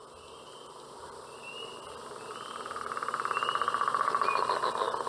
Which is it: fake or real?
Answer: real